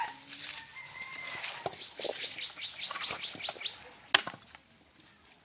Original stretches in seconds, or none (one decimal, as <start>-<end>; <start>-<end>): 0.0-5.4